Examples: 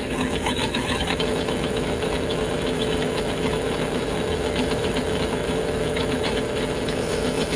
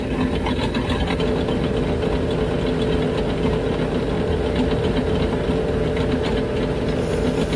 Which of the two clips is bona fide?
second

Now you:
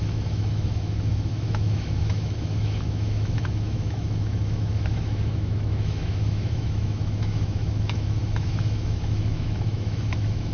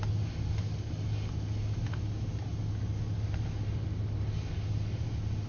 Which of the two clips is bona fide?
second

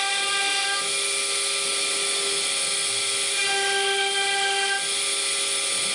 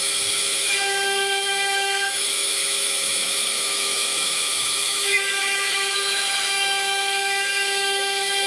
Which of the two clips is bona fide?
first